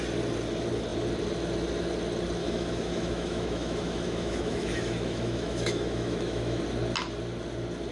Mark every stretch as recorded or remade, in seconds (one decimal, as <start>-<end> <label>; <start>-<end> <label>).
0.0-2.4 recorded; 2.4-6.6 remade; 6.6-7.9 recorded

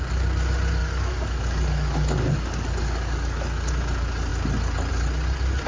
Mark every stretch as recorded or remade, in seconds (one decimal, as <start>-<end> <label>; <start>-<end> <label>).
0.0-0.8 recorded; 0.8-3.7 remade; 3.7-5.7 recorded

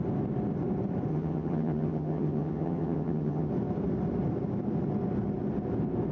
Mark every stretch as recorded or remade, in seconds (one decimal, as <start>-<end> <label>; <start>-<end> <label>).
0.0-1.1 recorded; 1.1-3.5 remade; 3.5-6.1 recorded

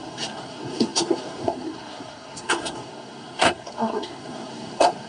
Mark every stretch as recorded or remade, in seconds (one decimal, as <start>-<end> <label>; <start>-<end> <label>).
0.0-5.1 remade